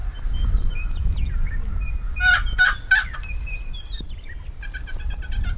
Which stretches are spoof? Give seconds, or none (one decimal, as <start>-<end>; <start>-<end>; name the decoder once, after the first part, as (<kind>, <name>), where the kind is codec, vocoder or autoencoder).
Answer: none